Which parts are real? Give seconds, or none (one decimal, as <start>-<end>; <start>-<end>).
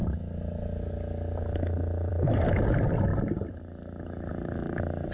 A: 0.0-5.1